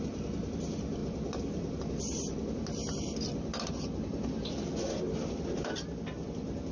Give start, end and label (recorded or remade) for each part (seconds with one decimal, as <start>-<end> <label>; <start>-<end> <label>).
0.0-6.7 recorded